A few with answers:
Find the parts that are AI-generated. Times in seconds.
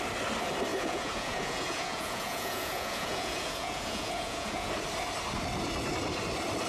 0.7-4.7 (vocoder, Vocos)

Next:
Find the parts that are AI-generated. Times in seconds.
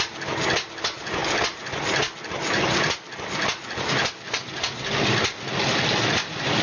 none